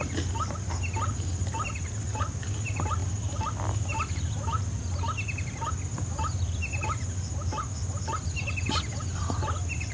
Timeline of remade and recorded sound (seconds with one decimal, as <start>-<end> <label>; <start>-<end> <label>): 0.0-3.0 recorded; 3.0-4.1 remade; 4.1-9.9 recorded